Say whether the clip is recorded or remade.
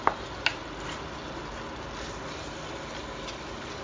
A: recorded